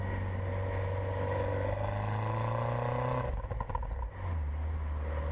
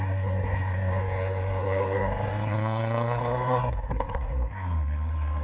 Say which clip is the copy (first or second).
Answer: second